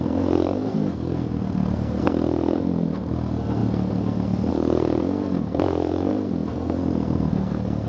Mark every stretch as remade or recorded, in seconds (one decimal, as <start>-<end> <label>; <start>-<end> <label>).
0.0-7.9 remade